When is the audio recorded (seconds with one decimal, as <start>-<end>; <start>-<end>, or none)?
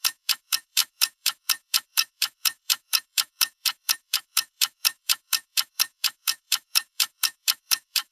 none